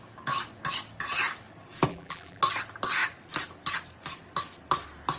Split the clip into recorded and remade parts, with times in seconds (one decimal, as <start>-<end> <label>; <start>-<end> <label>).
0.0-1.9 recorded; 1.9-2.4 remade; 2.4-5.2 recorded

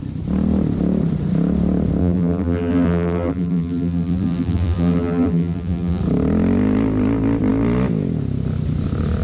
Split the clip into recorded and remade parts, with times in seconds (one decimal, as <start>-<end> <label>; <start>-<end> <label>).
0.0-2.0 recorded; 2.0-6.0 remade; 6.0-9.2 recorded

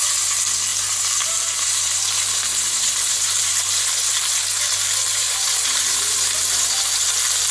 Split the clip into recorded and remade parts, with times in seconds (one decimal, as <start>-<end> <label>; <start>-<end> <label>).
0.0-0.7 recorded; 0.7-3.8 remade; 3.8-5.1 recorded; 5.1-7.1 remade; 7.1-7.5 recorded

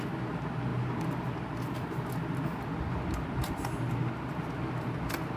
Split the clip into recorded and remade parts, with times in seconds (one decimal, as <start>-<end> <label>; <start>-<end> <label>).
0.0-5.4 recorded

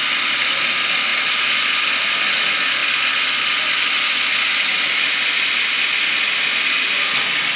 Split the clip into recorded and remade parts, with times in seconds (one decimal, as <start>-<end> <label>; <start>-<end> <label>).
0.0-1.1 recorded; 1.1-1.7 remade; 1.7-7.6 recorded

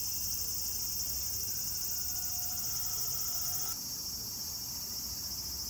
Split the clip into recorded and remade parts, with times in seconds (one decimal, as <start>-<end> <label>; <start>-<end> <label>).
0.0-5.7 recorded